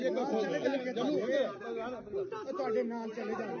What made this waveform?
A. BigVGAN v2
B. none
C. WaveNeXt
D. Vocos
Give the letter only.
B